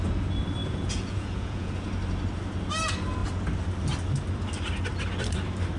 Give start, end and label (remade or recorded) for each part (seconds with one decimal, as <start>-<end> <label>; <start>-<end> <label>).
0.0-0.6 recorded; 0.6-1.7 remade; 1.7-5.8 recorded